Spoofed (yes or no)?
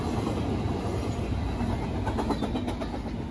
no